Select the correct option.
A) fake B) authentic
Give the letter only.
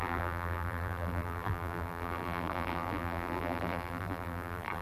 A